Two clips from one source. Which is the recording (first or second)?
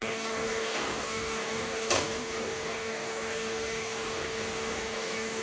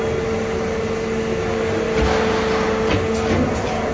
second